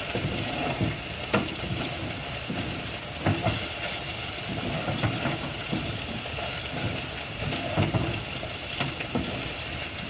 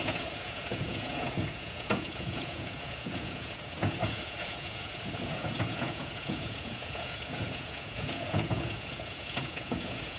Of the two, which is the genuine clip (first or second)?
first